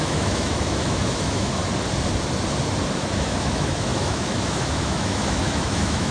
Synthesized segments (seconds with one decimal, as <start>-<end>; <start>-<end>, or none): 0.0-1.6; 3.0-6.1